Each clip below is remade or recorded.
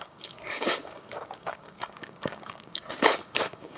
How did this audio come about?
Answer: remade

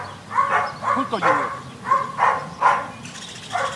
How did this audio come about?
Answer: recorded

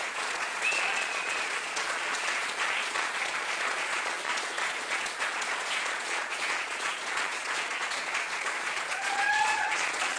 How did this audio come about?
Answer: remade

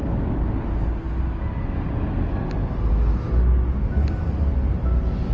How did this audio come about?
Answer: recorded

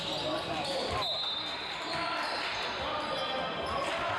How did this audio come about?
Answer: recorded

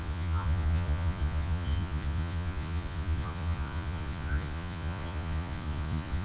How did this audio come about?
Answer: remade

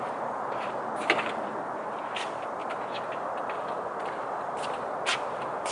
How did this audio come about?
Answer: recorded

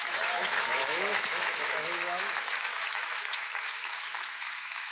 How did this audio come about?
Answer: remade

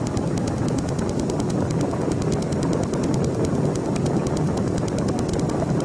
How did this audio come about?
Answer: recorded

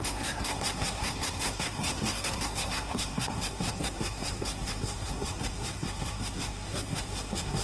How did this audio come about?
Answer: remade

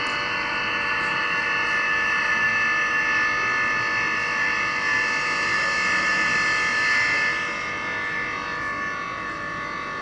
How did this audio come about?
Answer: recorded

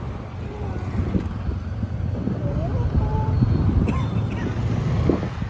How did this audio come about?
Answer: recorded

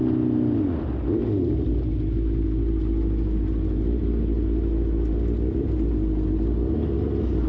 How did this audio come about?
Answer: recorded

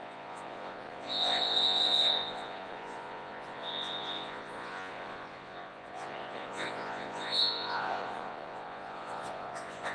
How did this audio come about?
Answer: remade